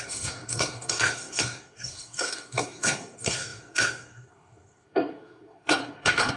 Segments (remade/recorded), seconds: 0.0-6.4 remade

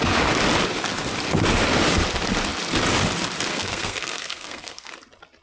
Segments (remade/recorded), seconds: 0.0-3.5 recorded; 3.5-4.9 remade; 4.9-5.4 recorded

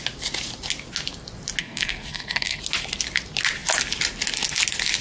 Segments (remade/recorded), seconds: 0.0-1.6 recorded; 1.6-2.6 remade; 2.6-5.0 recorded

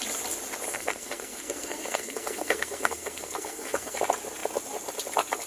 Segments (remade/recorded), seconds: 0.0-0.7 recorded; 0.7-4.0 remade; 4.0-5.5 recorded

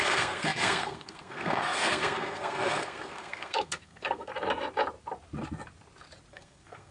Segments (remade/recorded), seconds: 0.0-4.3 remade; 4.3-6.3 recorded; 6.3-6.9 remade

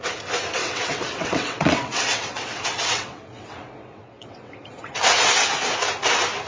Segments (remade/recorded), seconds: 0.0-0.6 recorded; 0.6-4.5 remade; 4.5-6.5 recorded

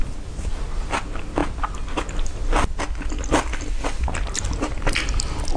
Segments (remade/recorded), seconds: 0.0-5.6 recorded

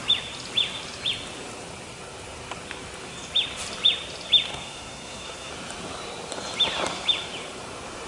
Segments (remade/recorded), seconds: 0.0-4.5 recorded; 4.5-5.5 remade; 5.5-8.1 recorded